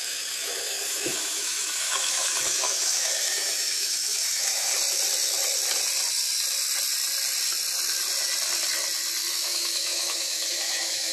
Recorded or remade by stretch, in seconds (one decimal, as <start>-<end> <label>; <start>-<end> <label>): 0.0-4.7 remade; 4.7-9.3 recorded; 9.3-11.1 remade